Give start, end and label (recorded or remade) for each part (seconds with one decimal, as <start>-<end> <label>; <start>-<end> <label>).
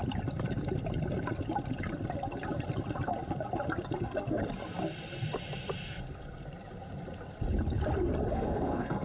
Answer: 0.0-4.0 recorded; 4.0-4.4 remade; 4.4-8.3 recorded; 8.3-9.0 remade